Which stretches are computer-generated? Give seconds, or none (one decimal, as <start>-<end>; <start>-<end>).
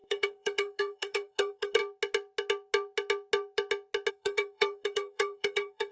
0.0-1.8; 4.1-5.9